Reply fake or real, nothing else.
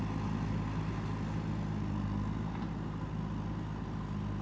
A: real